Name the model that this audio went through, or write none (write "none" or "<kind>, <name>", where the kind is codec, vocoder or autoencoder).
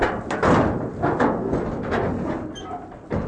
none